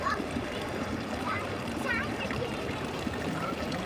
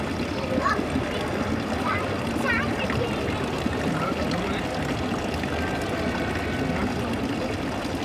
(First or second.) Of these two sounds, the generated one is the first